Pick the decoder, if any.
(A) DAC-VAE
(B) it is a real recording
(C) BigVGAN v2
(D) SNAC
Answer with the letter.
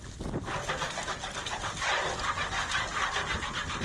B